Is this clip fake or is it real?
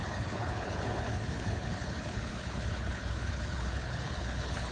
fake